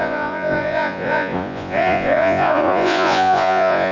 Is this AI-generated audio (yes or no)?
yes